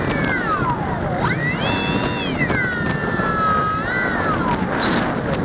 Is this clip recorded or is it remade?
recorded